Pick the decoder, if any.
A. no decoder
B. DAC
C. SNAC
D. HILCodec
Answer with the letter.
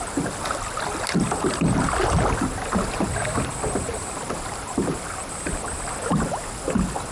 A